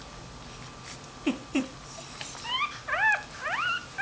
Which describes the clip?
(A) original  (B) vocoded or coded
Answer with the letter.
A